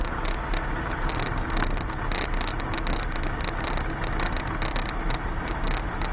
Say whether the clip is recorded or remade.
recorded